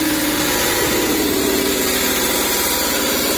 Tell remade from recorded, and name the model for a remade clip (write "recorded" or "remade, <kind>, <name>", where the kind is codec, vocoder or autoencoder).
remade, vocoder, BigVGAN v2